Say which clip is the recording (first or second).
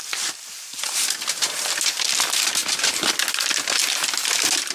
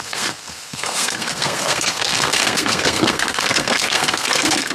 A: first